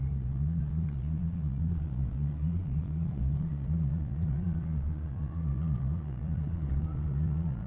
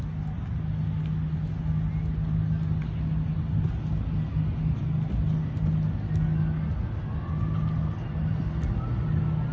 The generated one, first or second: first